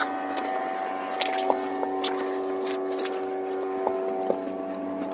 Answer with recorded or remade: recorded